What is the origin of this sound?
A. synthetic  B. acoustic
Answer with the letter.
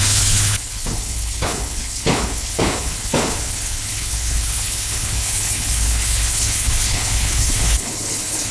A